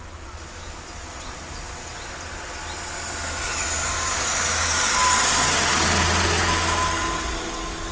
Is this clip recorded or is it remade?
recorded